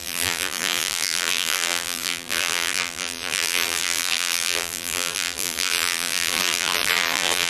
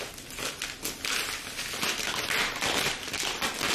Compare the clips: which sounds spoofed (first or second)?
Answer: first